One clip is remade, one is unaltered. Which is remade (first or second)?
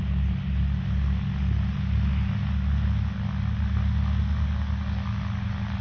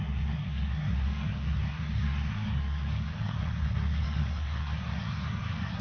second